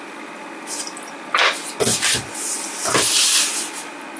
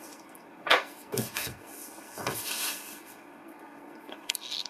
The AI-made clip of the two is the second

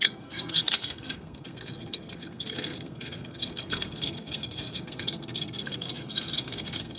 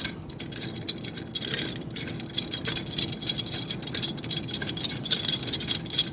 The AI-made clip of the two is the first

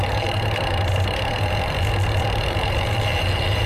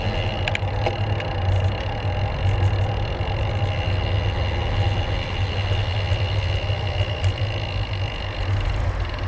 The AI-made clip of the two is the first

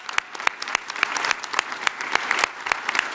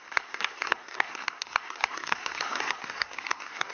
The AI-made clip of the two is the second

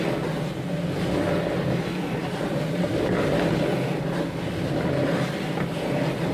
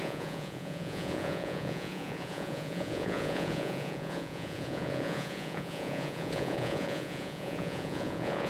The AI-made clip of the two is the second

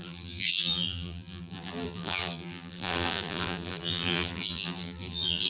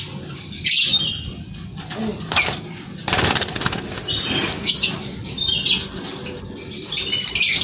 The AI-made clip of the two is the first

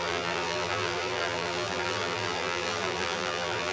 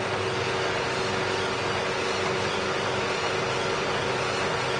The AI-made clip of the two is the first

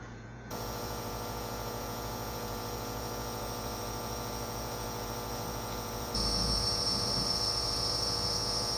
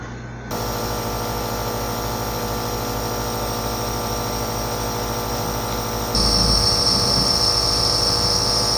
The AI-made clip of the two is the first